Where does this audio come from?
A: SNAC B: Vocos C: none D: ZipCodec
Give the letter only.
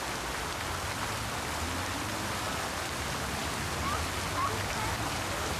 C